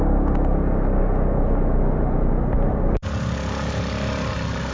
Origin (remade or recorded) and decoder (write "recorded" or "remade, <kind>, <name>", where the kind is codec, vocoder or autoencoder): recorded